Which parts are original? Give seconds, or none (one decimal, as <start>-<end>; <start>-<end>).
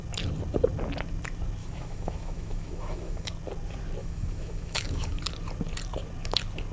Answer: 0.0-1.6; 3.3-4.0; 5.2-6.7